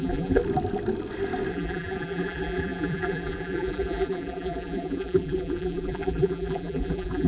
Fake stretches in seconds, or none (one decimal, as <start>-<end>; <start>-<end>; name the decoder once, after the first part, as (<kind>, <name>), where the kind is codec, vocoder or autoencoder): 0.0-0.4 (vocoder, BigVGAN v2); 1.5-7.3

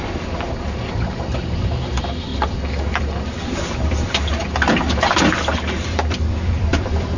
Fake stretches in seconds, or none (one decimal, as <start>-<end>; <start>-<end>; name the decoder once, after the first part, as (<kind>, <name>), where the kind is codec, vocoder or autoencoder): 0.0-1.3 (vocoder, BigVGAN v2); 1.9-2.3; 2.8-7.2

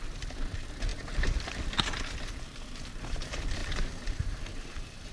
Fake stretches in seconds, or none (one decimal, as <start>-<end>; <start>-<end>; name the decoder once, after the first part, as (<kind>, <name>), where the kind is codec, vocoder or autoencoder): none

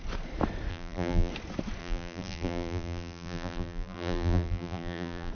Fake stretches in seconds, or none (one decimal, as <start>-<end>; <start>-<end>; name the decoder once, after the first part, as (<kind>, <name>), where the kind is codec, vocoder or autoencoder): 0.7-1.3 (vocoder, BigVGAN v2); 1.8-5.3